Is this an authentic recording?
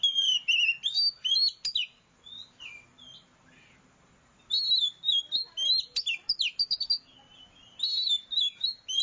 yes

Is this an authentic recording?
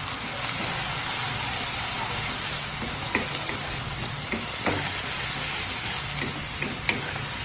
yes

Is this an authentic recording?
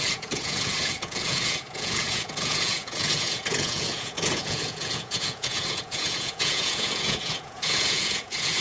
no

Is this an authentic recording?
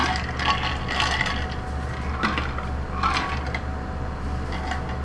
yes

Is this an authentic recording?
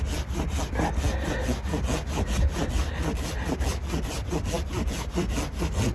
yes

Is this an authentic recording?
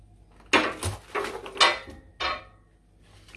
yes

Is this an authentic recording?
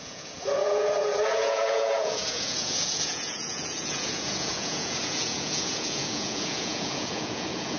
no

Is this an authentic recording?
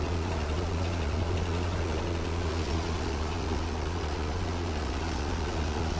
no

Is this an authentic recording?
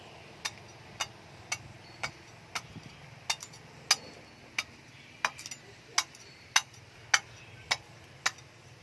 yes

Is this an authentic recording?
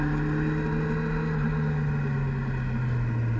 yes